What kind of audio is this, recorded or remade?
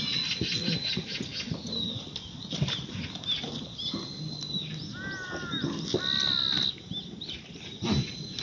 recorded